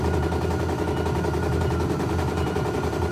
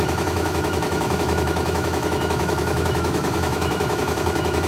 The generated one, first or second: second